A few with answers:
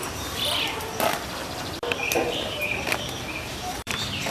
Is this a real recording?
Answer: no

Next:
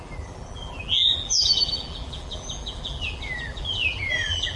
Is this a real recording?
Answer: no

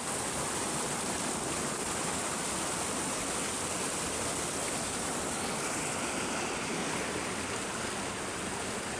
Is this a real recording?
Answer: yes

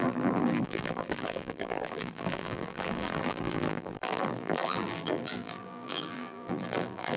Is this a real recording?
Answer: no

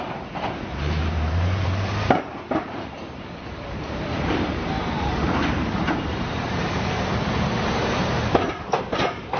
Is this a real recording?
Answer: no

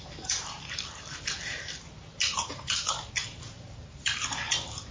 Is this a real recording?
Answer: no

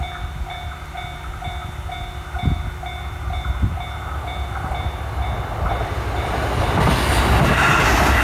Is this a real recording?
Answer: yes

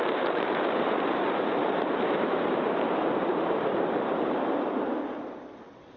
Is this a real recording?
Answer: no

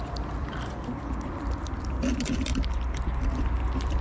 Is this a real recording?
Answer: no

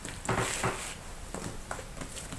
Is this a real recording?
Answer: yes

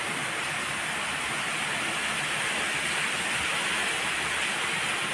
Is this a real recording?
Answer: yes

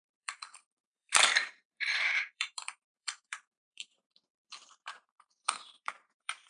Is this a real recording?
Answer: no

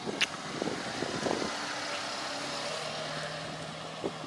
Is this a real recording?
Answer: yes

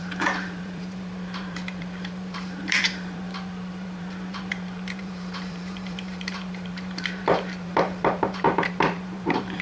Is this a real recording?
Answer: no